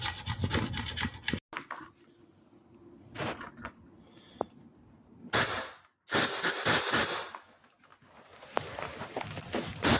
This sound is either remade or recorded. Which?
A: recorded